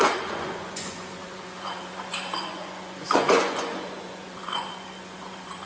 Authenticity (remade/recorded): remade